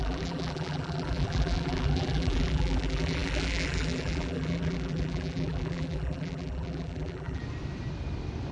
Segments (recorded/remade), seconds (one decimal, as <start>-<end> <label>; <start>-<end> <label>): 0.0-7.4 remade; 7.4-8.5 recorded